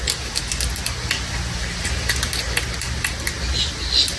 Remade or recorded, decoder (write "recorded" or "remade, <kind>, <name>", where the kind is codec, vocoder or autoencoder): recorded